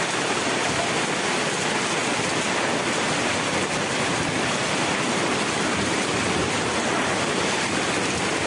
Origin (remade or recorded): remade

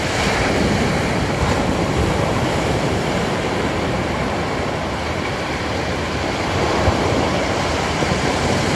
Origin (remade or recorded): remade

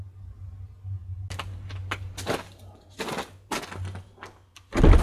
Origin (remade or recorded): recorded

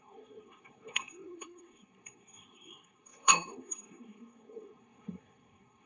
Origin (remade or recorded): remade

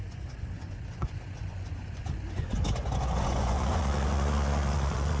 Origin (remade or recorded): remade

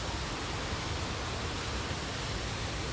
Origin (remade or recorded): recorded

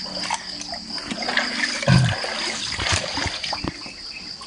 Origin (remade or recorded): recorded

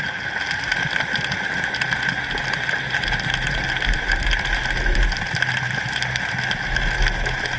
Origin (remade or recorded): recorded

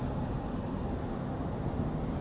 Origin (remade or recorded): recorded